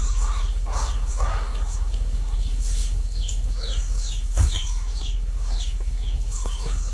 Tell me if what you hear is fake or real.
fake